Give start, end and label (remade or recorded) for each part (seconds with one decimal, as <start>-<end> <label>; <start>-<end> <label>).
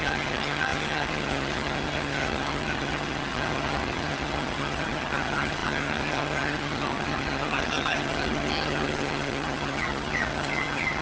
0.0-11.0 remade